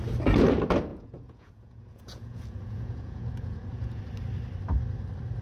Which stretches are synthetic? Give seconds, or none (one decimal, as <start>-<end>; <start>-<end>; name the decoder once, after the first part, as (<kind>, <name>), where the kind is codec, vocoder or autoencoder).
0.9-4.0 (vocoder, Vocos)